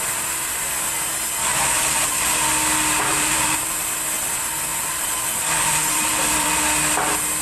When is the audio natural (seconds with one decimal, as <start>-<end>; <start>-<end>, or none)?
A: 0.0-1.5; 2.3-3.1; 3.8-4.7; 6.6-7.4